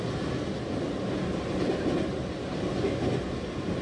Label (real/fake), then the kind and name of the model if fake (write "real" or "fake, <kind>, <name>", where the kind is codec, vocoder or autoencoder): real